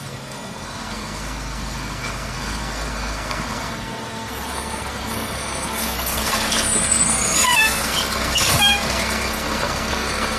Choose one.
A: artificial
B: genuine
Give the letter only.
A